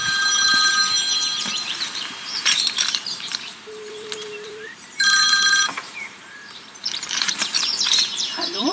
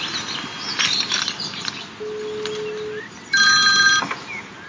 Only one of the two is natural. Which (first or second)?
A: second